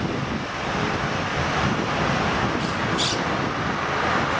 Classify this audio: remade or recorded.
remade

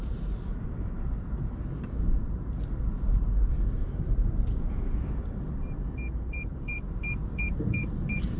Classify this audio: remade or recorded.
remade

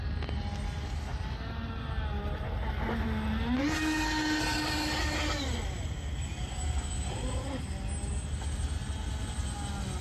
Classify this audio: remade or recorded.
recorded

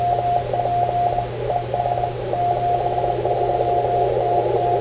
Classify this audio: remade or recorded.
recorded